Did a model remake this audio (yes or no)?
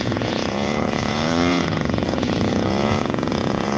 yes